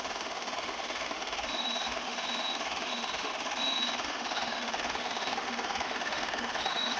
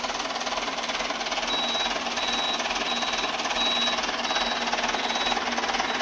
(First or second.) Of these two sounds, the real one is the second